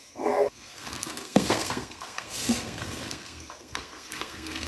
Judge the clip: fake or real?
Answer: fake